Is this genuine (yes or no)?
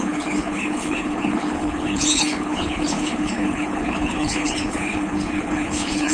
no